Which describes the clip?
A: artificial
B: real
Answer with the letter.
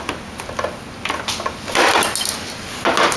B